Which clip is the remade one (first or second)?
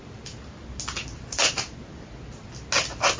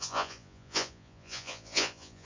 second